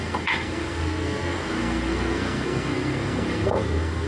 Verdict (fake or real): fake